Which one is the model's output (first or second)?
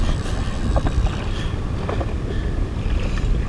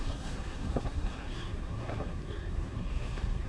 second